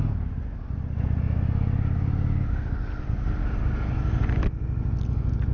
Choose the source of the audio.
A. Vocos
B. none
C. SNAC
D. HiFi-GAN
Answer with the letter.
B